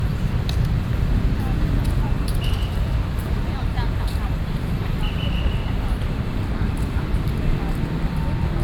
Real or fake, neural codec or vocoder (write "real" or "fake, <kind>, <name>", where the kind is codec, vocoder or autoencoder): fake, vocoder, BigVGAN v2